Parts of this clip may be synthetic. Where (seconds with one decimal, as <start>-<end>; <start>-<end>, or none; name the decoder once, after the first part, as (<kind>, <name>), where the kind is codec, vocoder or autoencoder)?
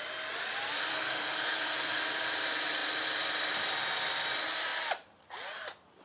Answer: 0.9-2.0 (codec, SNAC)